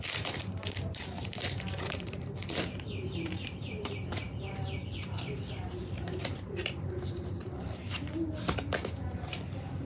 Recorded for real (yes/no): no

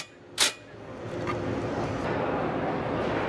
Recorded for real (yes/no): yes